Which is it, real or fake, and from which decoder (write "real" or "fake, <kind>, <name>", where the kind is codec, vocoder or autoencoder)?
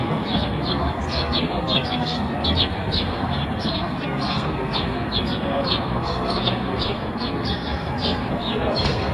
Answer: fake, codec, SNAC